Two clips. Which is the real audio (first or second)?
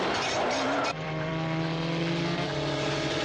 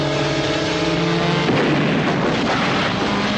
second